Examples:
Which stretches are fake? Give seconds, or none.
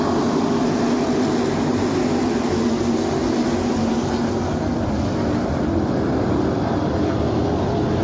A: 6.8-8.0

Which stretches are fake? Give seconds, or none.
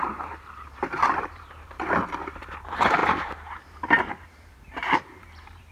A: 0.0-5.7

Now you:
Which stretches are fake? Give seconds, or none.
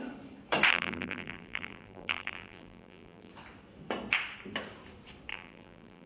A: 0.7-3.3; 5.3-6.1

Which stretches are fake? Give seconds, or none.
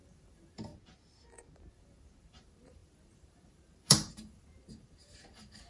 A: 0.0-0.7; 1.7-5.7